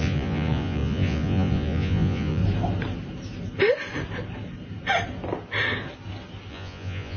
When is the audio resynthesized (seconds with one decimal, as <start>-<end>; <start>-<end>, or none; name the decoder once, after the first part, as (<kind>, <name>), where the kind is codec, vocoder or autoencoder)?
0.0-2.4 (vocoder, Vocos); 6.5-7.2